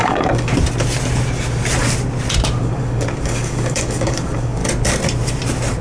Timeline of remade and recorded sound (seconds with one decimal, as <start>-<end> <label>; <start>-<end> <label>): 0.0-0.5 remade; 0.5-2.6 recorded; 2.6-4.6 remade; 4.6-5.8 recorded